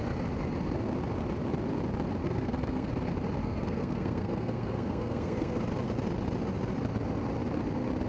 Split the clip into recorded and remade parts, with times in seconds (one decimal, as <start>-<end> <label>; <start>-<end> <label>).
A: 0.0-2.2 recorded; 2.2-2.9 remade; 2.9-3.4 recorded; 3.4-5.6 remade; 5.6-8.1 recorded